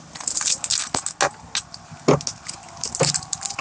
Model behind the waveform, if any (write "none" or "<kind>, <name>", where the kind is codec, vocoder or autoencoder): none